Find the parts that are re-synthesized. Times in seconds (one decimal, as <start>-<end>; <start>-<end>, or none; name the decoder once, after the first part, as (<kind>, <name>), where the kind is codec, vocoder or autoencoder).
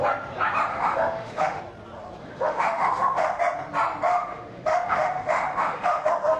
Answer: 0.7-1.6 (autoencoder, DAC-VAE); 2.2-3.4; 4.1-6.4